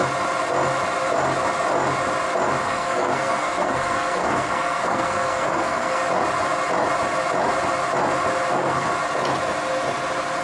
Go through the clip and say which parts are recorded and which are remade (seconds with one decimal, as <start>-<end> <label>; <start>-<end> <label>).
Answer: 0.0-2.6 recorded; 2.6-6.0 remade; 6.0-8.5 recorded; 8.5-8.9 remade; 8.9-10.4 recorded